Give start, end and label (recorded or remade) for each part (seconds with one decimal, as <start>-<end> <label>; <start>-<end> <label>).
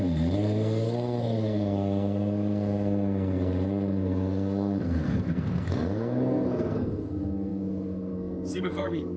0.0-9.2 remade